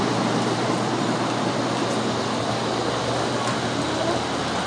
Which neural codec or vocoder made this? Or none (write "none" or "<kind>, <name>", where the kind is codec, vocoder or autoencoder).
none